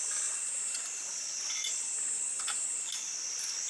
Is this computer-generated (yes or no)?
no